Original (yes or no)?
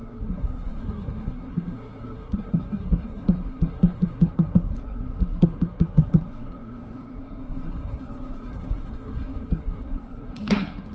no